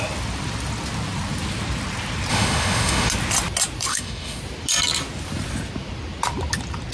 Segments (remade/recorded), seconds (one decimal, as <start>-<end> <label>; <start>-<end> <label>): 0.0-2.3 recorded; 2.3-3.1 remade; 3.1-3.9 recorded; 3.9-4.4 remade; 4.4-6.9 recorded